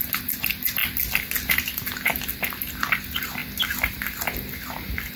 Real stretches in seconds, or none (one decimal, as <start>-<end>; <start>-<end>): 0.0-5.2